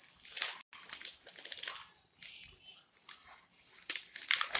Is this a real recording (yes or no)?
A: yes